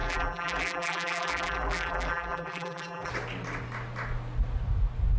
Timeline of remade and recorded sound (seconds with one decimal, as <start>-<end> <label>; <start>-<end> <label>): 0.0-3.1 remade; 3.1-5.2 recorded